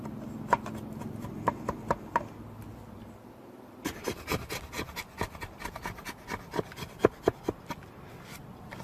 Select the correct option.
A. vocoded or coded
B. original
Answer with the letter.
B